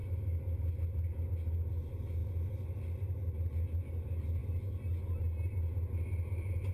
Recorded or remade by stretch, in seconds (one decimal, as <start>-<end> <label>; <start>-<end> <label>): 0.0-6.7 recorded